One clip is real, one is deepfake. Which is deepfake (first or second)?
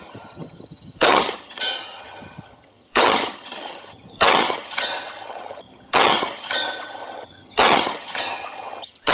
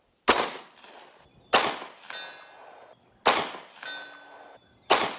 first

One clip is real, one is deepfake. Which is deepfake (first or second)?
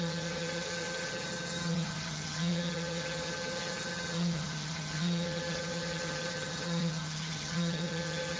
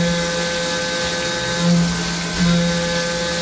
first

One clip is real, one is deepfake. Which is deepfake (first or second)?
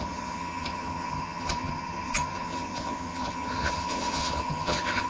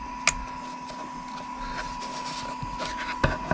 first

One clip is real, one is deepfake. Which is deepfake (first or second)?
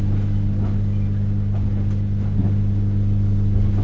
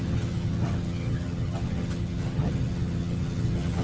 second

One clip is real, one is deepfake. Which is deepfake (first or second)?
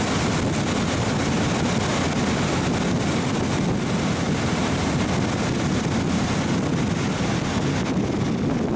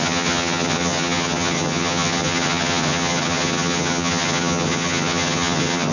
second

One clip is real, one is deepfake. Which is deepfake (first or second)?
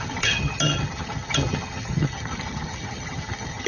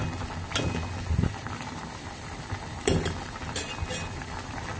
first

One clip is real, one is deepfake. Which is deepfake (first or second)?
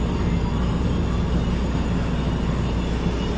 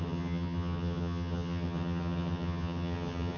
second